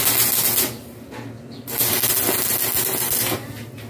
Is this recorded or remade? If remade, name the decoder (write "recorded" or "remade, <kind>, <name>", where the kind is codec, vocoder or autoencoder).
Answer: recorded